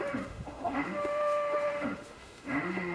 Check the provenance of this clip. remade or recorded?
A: remade